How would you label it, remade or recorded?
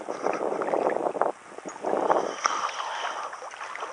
recorded